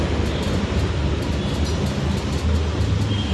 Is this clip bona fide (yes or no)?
yes